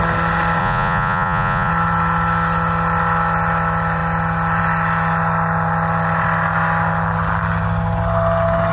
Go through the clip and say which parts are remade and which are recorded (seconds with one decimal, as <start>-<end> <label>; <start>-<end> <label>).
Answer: 0.0-0.6 recorded; 0.6-1.7 remade; 1.7-8.7 recorded